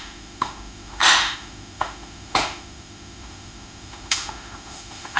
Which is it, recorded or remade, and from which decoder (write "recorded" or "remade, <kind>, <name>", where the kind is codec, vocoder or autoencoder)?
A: remade, autoencoder, DAC-VAE